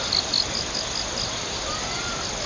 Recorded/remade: recorded